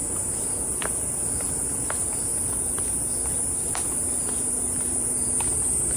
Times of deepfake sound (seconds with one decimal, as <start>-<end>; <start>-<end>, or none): none